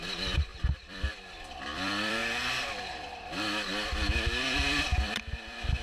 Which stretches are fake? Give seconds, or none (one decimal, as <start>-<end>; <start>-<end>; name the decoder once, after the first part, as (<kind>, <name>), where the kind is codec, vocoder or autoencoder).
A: 0.0-2.2 (vocoder, BigVGAN v2); 4.8-5.8